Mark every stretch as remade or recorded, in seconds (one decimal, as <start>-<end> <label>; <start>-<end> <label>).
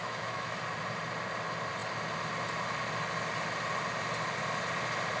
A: 0.0-0.6 remade; 0.6-5.2 recorded